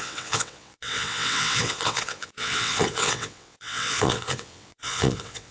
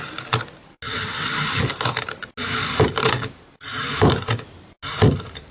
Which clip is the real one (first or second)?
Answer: second